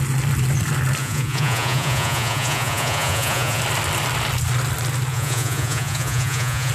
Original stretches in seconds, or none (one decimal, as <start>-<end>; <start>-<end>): 0.0-1.0; 3.6-5.1